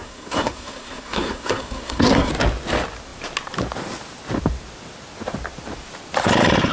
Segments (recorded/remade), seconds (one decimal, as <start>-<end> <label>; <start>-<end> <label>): 0.0-2.3 remade; 2.3-6.7 recorded